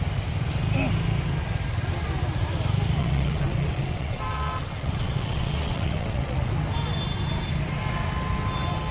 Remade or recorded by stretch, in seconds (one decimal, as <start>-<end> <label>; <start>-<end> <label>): 0.0-3.0 recorded; 3.0-6.5 remade; 6.5-8.9 recorded